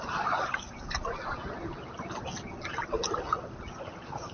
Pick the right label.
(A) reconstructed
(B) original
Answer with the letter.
B